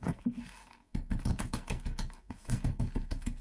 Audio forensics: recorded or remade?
remade